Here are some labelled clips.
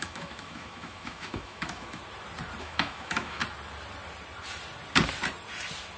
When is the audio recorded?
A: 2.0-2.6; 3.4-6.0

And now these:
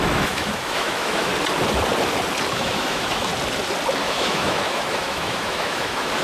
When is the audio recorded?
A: 1.3-2.5; 3.3-4.0

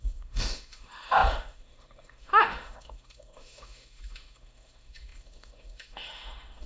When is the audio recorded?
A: none

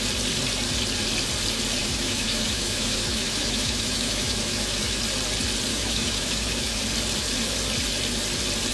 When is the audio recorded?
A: 0.0-1.8; 5.0-5.7; 6.8-8.7

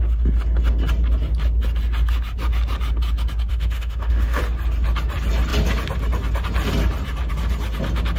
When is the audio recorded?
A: 0.0-3.5; 4.4-8.2

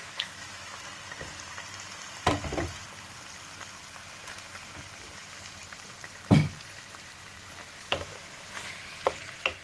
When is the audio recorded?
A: 0.8-7.6; 9.0-9.6